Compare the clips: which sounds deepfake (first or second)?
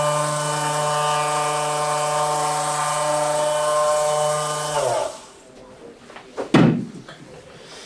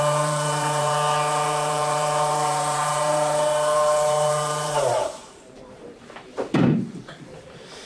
second